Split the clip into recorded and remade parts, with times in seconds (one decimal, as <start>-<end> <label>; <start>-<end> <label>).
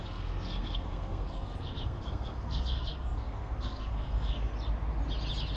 0.0-4.5 remade; 4.5-5.6 recorded